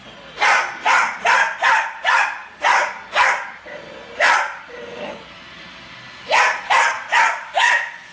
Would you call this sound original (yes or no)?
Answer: yes